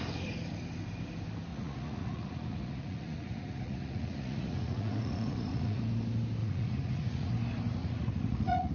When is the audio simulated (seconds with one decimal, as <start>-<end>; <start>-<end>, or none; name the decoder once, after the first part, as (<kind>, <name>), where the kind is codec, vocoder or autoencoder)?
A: 1.5-5.8 (vocoder, Vocos); 6.4-7.3; 7.8-8.7